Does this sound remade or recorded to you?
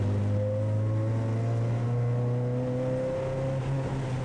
recorded